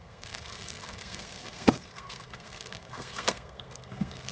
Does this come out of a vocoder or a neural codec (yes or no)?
yes